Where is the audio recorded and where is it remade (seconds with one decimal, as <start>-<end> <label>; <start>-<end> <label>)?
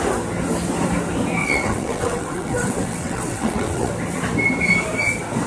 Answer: 0.0-1.4 recorded; 1.4-3.9 remade; 3.9-5.5 recorded